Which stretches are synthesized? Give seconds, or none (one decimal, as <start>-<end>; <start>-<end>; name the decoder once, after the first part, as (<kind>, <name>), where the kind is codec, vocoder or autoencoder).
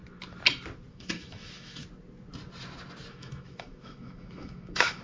0.9-1.8 (autoencoder, DAC-VAE); 3.1-5.0